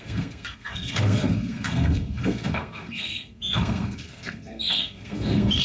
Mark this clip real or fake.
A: fake